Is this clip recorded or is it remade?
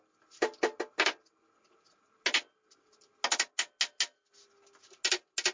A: recorded